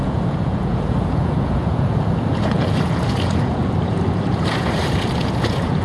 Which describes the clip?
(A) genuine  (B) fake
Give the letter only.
B